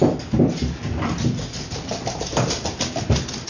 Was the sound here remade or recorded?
recorded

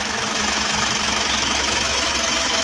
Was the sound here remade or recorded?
remade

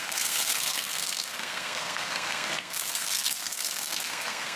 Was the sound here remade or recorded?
remade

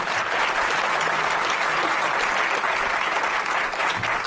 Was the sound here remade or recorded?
recorded